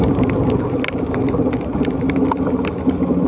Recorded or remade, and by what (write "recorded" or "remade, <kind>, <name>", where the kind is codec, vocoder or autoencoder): recorded